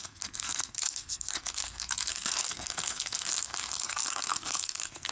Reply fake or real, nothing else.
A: fake